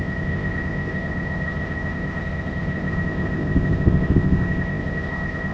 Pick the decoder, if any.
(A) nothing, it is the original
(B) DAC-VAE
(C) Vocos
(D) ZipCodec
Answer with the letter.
D